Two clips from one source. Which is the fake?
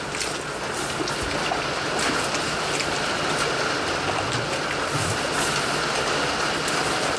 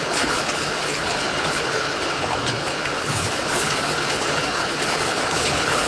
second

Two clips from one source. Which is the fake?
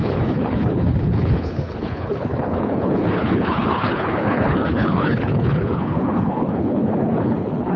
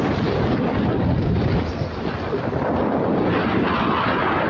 first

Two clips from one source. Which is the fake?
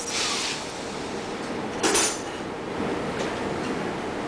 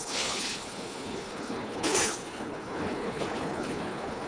second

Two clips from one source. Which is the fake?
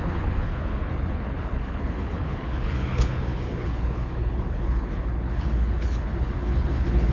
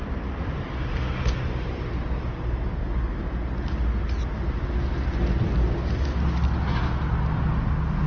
first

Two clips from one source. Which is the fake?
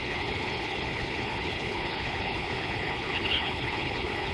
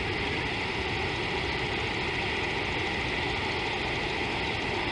first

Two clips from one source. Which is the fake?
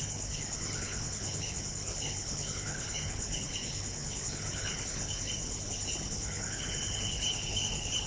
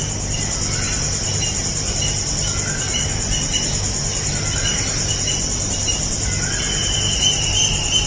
first